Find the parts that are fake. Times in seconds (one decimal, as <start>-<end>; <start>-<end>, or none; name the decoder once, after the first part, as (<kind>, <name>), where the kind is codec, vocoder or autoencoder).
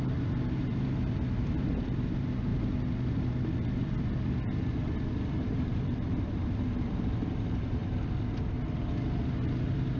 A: 0.0-2.5 (vocoder, BigVGAN v2); 5.4-7.8; 9.6-10.0